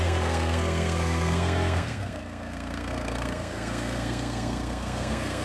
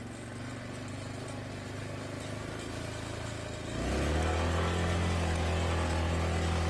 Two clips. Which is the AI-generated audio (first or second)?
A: first